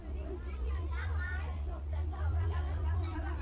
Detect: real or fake fake